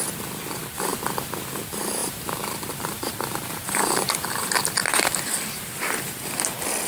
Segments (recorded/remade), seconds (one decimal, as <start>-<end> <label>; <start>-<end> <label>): 0.0-2.0 recorded; 2.0-4.5 remade; 4.5-6.9 recorded